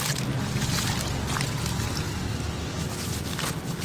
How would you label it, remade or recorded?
recorded